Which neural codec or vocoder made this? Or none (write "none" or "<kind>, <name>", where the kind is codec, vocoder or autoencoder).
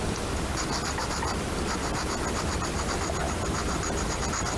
none